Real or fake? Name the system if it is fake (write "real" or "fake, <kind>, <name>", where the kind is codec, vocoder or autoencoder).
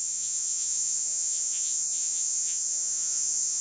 fake, vocoder, Vocos